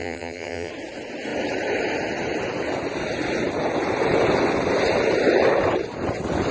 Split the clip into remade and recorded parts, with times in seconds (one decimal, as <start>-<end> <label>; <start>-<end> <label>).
0.0-0.7 remade; 0.7-6.5 recorded